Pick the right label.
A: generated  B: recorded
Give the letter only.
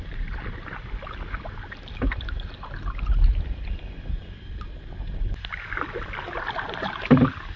B